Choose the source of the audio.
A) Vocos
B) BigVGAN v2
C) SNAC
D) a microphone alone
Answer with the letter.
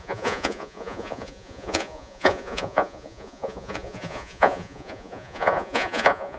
A